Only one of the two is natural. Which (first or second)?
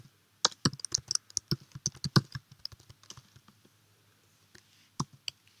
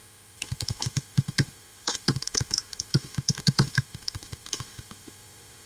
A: first